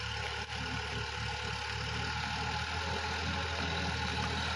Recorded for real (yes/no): yes